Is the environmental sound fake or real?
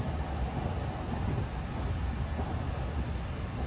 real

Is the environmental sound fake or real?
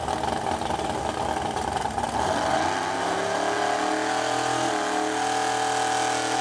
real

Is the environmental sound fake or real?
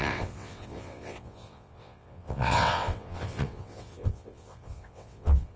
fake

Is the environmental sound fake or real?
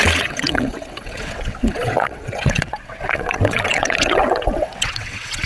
fake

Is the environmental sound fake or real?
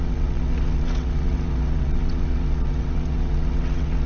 fake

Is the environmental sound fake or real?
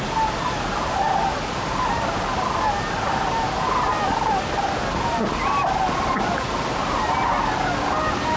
real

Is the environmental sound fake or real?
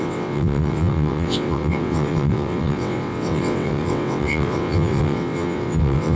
fake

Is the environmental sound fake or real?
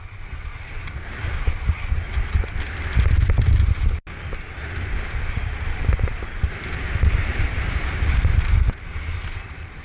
real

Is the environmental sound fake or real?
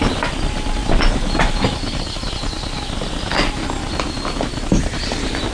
real